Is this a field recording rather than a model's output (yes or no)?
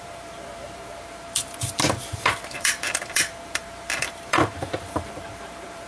no